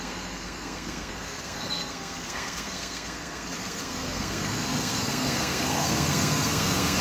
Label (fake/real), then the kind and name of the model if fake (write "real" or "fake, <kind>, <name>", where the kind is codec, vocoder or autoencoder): fake, codec, SNAC